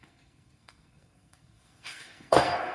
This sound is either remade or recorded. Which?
remade